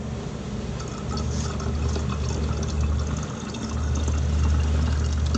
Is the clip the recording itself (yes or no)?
yes